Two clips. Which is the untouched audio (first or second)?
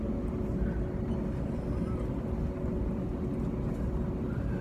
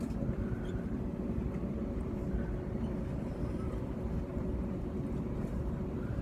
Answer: first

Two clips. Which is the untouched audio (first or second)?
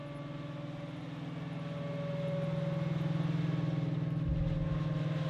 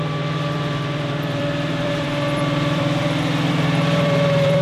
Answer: first